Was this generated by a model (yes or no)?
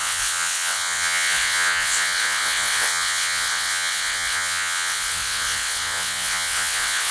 yes